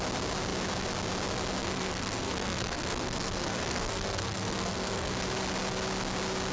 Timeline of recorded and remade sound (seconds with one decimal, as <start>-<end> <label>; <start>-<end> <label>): 0.0-1.6 recorded; 1.6-5.1 remade; 5.1-6.5 recorded